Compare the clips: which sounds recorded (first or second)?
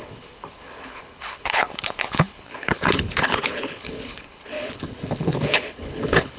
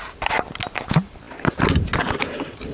second